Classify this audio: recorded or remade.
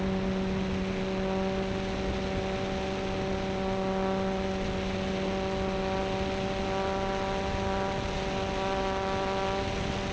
recorded